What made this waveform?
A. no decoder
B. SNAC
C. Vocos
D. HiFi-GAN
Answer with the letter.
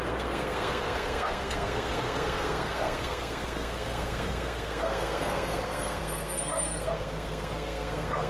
B